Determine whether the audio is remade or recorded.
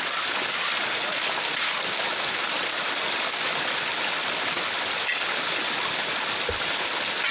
recorded